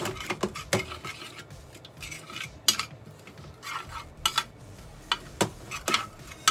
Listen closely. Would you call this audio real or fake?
real